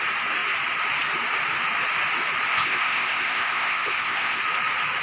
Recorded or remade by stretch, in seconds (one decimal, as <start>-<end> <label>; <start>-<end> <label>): 0.0-2.5 recorded; 2.5-4.4 remade; 4.4-5.0 recorded